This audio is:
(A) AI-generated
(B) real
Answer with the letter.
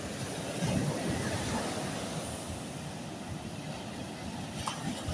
B